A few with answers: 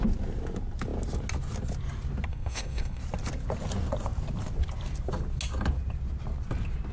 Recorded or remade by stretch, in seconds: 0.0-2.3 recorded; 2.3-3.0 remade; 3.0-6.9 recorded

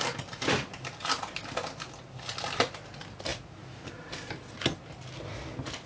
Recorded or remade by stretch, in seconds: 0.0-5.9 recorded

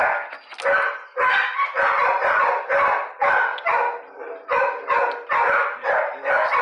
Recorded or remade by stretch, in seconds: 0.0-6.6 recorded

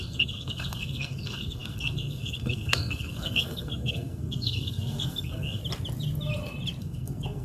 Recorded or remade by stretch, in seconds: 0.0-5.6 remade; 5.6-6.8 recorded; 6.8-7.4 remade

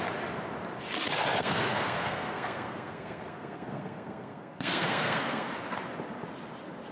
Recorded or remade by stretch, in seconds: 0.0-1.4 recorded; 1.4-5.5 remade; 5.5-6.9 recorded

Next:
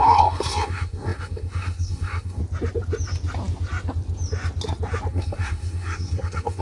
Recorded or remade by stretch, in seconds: 0.0-2.4 remade; 2.4-5.1 recorded; 5.1-6.6 remade

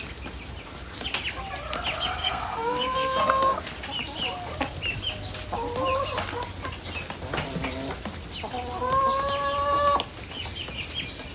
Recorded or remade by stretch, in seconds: 0.0-2.2 recorded; 2.2-3.6 remade; 3.6-11.3 recorded